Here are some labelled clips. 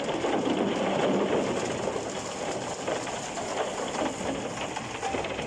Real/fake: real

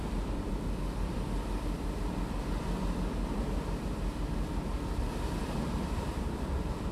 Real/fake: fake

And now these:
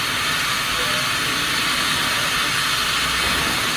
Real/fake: real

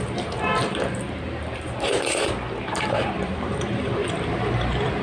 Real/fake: fake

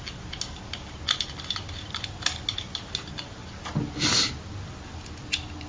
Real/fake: real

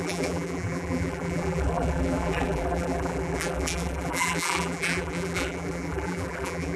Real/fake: fake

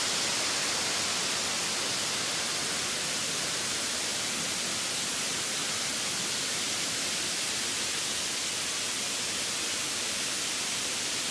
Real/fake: real